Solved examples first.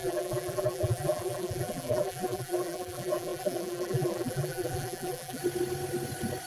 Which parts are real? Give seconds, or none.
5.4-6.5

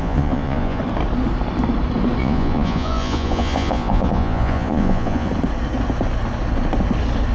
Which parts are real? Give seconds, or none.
0.8-2.2; 5.3-7.3